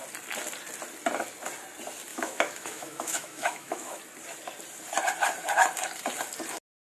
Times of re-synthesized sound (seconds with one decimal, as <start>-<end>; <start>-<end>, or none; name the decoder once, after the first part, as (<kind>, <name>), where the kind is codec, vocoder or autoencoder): 2.1-4.0 (autoencoder, DAC-VAE)

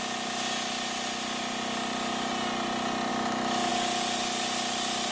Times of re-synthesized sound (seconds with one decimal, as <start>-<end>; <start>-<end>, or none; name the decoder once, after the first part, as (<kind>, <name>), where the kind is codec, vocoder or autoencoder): 3.1-3.7 (autoencoder, DAC-VAE)